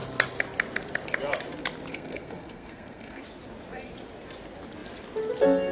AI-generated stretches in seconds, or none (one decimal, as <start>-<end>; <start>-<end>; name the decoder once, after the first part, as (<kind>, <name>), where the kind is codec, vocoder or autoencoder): 1.9-3.2 (codec, SNAC)